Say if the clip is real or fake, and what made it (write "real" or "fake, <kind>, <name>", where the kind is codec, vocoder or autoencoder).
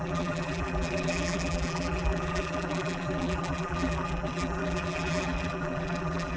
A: fake, vocoder, BigVGAN v2